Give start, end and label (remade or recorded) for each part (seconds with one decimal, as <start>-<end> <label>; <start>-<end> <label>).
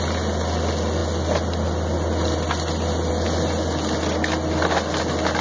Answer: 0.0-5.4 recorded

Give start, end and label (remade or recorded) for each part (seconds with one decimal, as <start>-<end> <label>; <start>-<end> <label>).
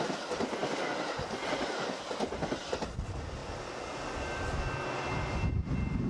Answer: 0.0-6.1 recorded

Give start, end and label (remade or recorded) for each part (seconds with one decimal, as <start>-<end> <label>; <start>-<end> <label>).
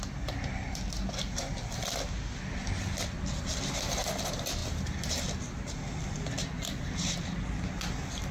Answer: 0.0-8.3 recorded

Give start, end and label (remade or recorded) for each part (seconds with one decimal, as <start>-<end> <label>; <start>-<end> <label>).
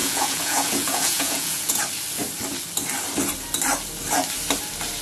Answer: 0.0-1.8 remade; 1.8-5.0 recorded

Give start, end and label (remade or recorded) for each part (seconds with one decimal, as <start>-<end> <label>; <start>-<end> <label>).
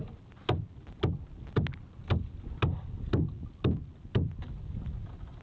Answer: 0.0-5.4 recorded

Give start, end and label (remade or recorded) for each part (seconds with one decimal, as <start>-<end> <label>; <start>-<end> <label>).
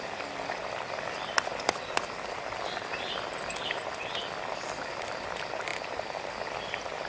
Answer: 0.0-7.1 recorded